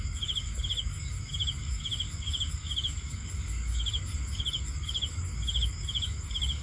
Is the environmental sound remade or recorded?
remade